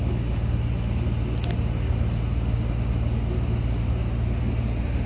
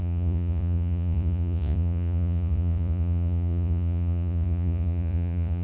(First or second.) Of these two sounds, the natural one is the first